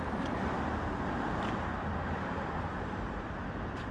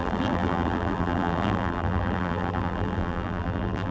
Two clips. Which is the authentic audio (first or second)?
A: first